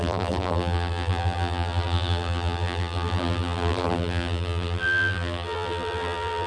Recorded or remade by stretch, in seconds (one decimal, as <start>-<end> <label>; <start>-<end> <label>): 0.0-6.5 remade